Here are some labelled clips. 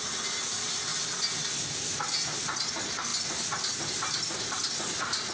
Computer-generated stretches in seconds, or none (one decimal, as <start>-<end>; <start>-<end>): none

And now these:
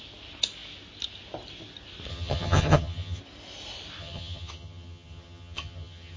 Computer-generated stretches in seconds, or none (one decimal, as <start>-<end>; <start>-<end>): 2.1-3.2; 4.0-6.2

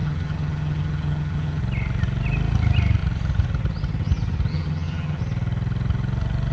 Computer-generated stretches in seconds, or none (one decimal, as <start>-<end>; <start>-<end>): 0.0-1.6; 4.5-5.2

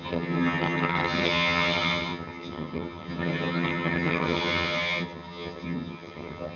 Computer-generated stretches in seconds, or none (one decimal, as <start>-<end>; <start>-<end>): 0.0-6.6

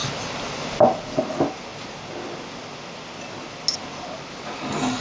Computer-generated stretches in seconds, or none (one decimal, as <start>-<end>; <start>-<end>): none

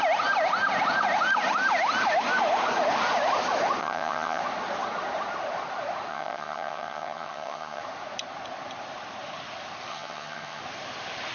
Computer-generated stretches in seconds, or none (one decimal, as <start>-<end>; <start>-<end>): 3.8-4.4; 6.1-7.8; 9.9-10.6